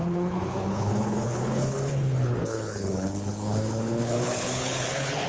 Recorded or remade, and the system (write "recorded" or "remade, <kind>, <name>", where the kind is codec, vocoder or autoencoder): remade, codec, HILCodec